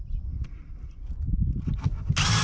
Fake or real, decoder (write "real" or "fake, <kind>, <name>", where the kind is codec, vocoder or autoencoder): real